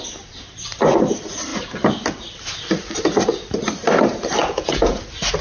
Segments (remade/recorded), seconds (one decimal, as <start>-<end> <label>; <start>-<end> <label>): 0.0-4.4 recorded; 4.4-5.0 remade; 5.0-5.4 recorded